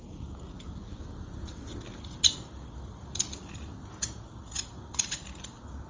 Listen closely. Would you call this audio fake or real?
real